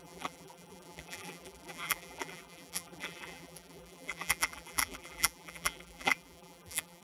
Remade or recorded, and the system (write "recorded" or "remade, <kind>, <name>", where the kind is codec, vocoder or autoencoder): remade, vocoder, BigVGAN v2